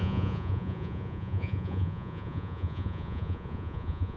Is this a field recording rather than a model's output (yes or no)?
no